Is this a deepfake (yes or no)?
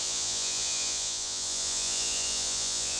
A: yes